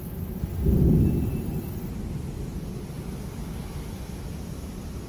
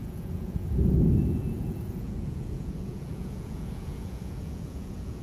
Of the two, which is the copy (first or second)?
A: second